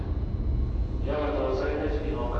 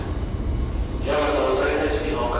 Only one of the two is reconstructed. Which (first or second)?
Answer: second